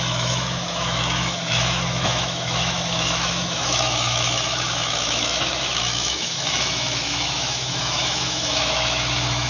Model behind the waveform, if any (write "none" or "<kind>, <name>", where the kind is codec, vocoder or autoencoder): autoencoder, DAC-VAE